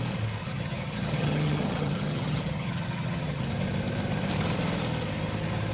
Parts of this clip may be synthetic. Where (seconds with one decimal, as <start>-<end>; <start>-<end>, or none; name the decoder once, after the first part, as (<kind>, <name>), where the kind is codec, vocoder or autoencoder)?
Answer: 0.4-3.4 (vocoder, HiFi-GAN)